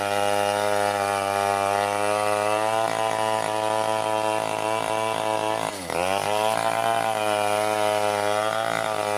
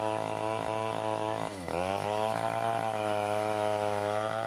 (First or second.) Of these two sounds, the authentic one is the first